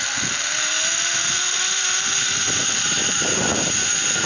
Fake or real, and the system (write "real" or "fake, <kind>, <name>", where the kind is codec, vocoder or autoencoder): real